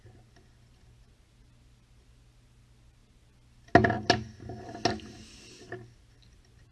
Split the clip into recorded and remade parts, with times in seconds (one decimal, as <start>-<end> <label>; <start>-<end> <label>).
0.0-6.7 recorded